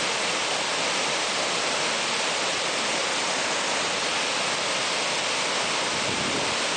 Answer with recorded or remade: recorded